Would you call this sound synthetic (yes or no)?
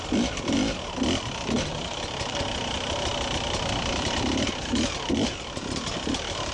no